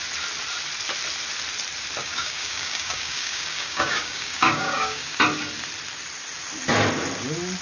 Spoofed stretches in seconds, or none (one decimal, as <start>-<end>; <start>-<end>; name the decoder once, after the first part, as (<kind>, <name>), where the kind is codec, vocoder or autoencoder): 2.0-5.2 (codec, DAC)